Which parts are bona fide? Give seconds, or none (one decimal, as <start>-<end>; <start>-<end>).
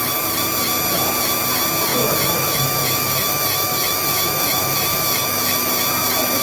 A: 0.0-1.9; 5.7-6.4